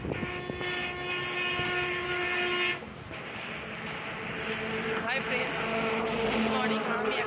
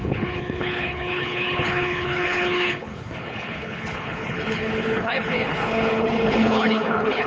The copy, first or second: second